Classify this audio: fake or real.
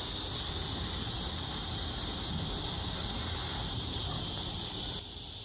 real